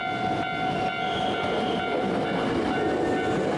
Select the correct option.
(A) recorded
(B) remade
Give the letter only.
A